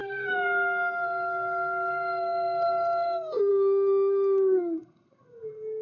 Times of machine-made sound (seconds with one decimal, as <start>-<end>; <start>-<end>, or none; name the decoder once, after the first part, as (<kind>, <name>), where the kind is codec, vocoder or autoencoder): 0.0-5.8 (codec, SNAC)